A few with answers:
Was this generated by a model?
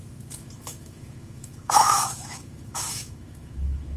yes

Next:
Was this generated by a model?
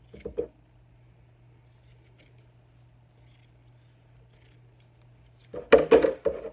no